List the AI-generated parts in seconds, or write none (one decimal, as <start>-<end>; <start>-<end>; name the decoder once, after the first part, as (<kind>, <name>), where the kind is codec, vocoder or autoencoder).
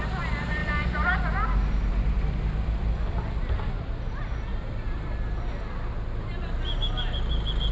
none